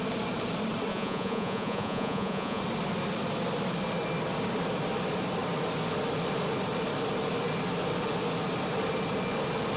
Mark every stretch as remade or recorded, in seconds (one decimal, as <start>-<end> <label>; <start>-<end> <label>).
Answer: 0.0-0.9 recorded; 0.9-2.6 remade; 2.6-9.8 recorded